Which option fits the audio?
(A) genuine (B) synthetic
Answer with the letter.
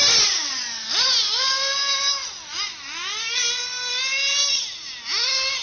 A